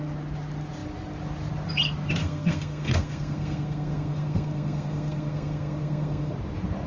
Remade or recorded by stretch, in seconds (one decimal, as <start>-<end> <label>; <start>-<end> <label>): 0.0-2.2 recorded; 2.2-6.3 remade; 6.3-6.9 recorded